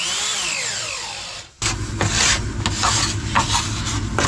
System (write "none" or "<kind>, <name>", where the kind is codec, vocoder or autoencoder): none